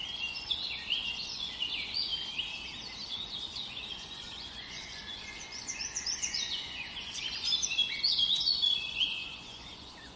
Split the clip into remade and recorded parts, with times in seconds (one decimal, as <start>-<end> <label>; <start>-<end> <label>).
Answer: 0.0-2.1 remade; 2.1-3.1 recorded; 3.1-10.2 remade